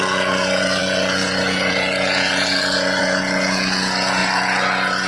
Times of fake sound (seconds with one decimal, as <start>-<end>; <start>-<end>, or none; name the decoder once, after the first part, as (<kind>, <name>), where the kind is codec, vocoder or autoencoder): 0.0-5.1 (vocoder, Vocos)